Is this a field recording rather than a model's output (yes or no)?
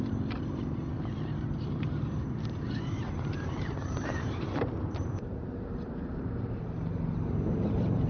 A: no